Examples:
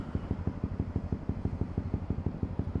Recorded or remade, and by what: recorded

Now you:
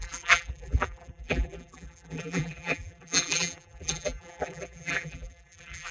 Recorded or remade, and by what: remade, vocoder, BigVGAN v2